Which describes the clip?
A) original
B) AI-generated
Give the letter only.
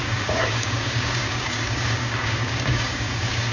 B